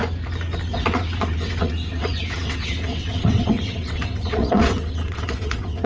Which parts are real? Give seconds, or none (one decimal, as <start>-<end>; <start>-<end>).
0.0-0.7